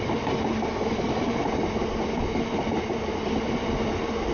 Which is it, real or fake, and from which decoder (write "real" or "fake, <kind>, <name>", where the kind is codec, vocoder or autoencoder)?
real